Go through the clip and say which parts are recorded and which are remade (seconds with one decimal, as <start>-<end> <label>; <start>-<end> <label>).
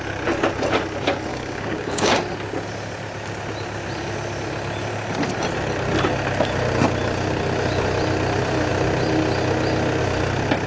0.0-1.3 recorded; 1.3-2.2 remade; 2.2-10.7 recorded